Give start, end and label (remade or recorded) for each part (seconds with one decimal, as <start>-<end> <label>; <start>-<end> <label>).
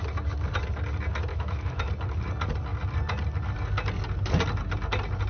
0.0-1.3 recorded; 1.3-1.9 remade; 1.9-5.3 recorded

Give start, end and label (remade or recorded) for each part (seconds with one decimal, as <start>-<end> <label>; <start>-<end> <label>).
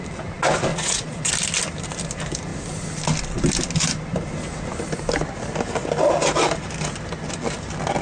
0.0-0.7 recorded; 0.7-1.3 remade; 1.3-8.0 recorded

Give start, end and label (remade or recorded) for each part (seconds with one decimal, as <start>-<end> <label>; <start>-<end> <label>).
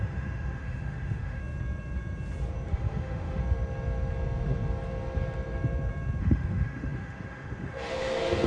0.0-1.4 remade; 1.4-2.7 recorded; 2.7-3.4 remade; 3.4-6.2 recorded; 6.2-8.5 remade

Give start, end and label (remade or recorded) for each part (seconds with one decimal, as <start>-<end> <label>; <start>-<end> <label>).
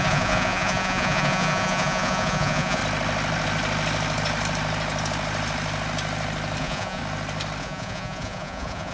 0.0-2.8 remade; 2.8-6.6 recorded; 6.6-7.0 remade; 7.0-7.6 recorded; 7.6-8.9 remade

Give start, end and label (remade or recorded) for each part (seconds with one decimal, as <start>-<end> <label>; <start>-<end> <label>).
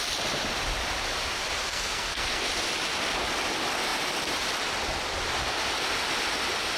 0.0-1.7 recorded; 1.7-2.4 remade; 2.4-6.8 recorded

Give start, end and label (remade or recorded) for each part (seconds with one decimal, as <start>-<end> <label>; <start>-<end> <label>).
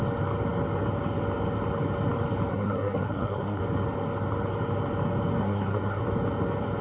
0.0-2.5 recorded; 2.5-3.6 remade; 3.6-5.4 recorded; 5.4-6.0 remade; 6.0-6.8 recorded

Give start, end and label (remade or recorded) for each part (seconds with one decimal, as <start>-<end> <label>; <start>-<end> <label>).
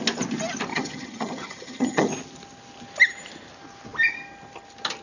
0.0-0.7 recorded; 0.7-2.1 remade; 2.1-5.0 recorded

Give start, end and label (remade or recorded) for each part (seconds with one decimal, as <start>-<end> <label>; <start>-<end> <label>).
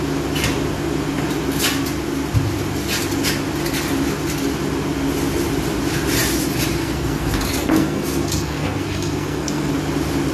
0.0-6.8 recorded; 6.8-9.7 remade; 9.7-10.3 recorded